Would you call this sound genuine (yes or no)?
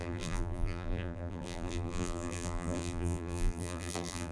no